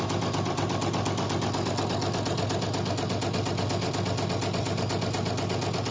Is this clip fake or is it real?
real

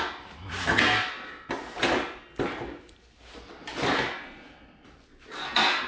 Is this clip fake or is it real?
real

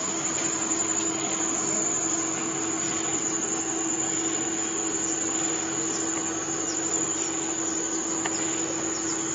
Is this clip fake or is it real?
real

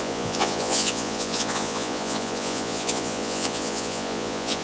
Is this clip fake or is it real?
fake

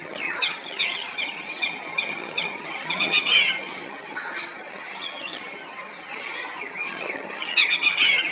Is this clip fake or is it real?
fake